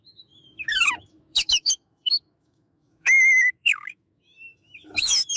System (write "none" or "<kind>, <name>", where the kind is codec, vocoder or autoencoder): autoencoder, DAC-VAE